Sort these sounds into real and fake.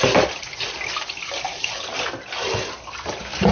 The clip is real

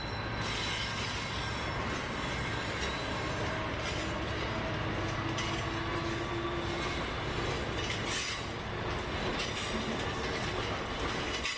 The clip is real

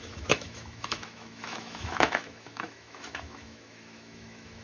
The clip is fake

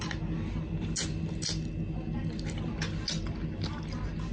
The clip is real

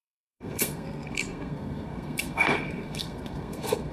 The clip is fake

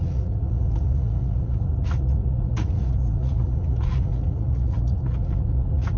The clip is fake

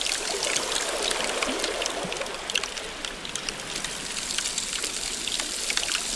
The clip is real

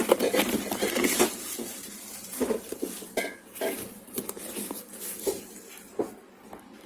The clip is real